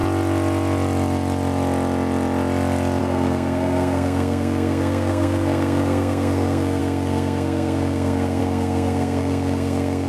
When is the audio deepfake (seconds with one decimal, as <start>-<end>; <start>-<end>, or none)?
3.0-10.1